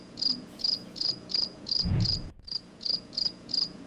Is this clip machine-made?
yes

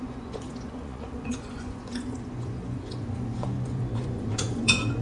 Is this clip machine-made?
yes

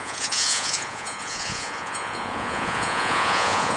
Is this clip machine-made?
yes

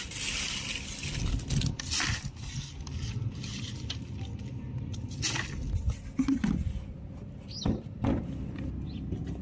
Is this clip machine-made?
no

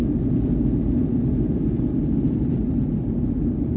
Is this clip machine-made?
no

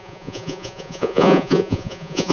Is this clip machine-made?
yes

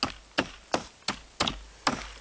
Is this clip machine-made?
no